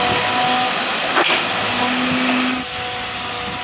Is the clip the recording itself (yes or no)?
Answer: yes